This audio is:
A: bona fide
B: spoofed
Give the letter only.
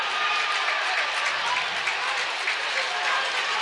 A